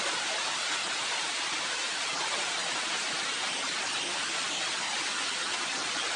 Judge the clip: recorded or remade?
recorded